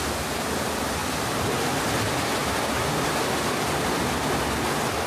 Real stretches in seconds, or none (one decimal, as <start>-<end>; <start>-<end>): 0.0-1.0; 1.7-5.1